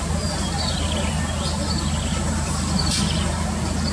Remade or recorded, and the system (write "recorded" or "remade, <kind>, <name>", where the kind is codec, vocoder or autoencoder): recorded